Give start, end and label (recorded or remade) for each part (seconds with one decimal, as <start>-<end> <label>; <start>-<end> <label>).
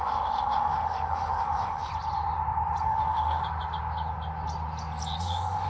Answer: 0.0-1.9 remade; 1.9-2.8 recorded; 2.8-3.4 remade; 3.4-5.2 recorded; 5.2-5.7 remade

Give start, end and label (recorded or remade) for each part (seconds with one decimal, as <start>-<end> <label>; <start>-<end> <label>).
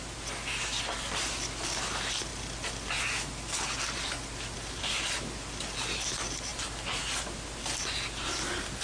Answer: 0.0-8.8 recorded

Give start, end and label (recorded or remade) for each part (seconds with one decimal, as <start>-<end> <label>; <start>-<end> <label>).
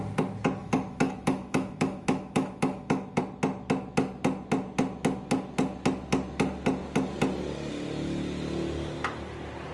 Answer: 0.0-0.6 recorded; 0.6-3.2 remade; 3.2-9.7 recorded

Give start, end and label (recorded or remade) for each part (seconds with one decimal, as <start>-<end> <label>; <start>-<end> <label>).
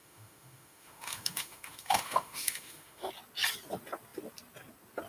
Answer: 0.0-3.1 remade; 3.1-5.1 recorded